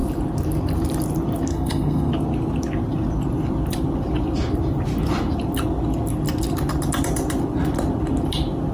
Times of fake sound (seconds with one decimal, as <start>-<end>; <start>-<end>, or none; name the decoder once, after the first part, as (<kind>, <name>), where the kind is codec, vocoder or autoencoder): 1.5-2.1 (codec, SNAC)